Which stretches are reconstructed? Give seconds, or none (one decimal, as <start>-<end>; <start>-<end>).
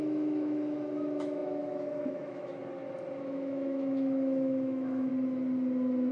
0.0-2.6; 3.2-5.1